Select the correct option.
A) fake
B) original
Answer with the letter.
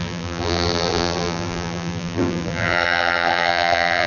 A